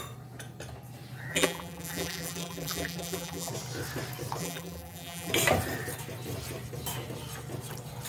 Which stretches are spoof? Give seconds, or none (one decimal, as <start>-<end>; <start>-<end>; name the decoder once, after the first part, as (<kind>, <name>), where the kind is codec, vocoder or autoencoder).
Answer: 1.3-3.5 (vocoder, BigVGAN v2); 4.4-5.3